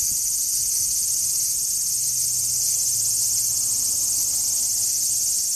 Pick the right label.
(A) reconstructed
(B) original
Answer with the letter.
B